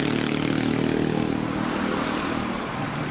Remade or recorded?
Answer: recorded